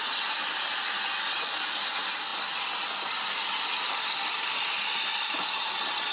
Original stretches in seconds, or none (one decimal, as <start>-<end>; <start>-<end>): 0.0-6.1